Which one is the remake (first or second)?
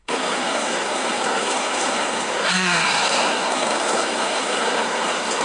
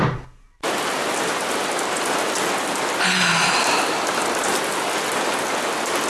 first